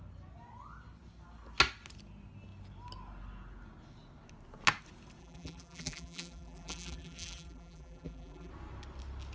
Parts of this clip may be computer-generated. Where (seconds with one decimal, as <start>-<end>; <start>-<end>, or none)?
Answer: 5.2-8.5